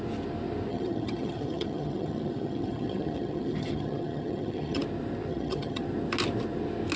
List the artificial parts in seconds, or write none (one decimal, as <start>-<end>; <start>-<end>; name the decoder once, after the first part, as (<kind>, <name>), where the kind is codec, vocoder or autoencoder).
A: 0.7-4.8 (vocoder, HiFi-GAN); 5.3-5.8